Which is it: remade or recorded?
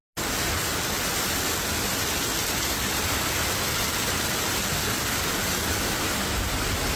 recorded